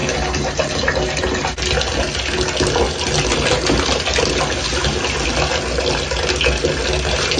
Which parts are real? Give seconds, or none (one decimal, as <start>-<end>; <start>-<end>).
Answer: 0.0-7.4